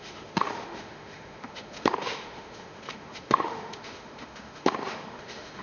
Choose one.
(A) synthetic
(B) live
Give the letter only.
A